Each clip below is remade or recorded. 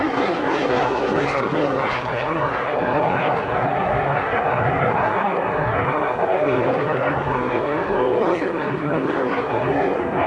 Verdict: remade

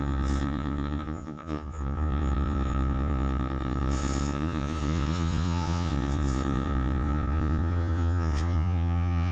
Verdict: remade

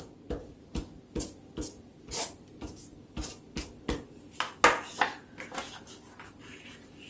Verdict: recorded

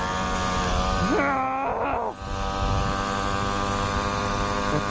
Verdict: recorded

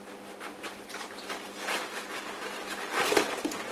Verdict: recorded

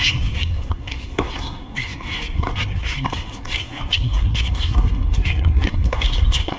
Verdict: remade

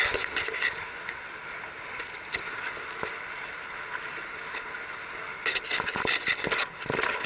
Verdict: recorded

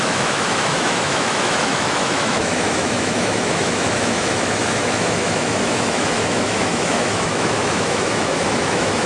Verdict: remade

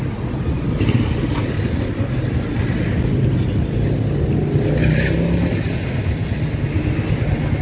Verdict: recorded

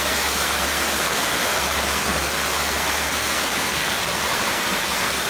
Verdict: remade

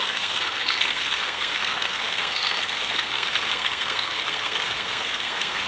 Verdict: remade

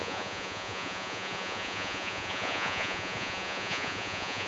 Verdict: remade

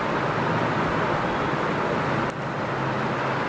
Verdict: recorded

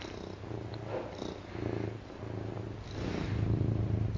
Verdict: recorded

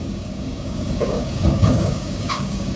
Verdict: remade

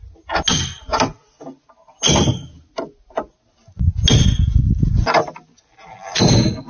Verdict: recorded